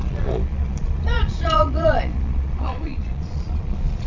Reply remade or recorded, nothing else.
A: remade